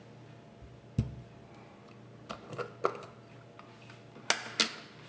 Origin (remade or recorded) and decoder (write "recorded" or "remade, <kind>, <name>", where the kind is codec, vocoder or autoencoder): recorded